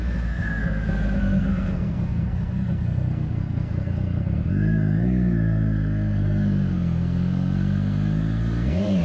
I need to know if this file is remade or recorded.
remade